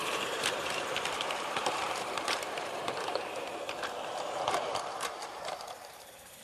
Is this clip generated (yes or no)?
yes